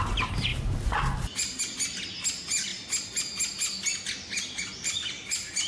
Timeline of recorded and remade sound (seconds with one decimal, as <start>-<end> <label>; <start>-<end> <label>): 0.0-0.5 recorded; 0.5-1.6 remade; 1.6-5.7 recorded